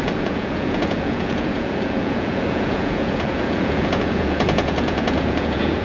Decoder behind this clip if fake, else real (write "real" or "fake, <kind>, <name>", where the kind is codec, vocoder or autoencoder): fake, vocoder, Vocos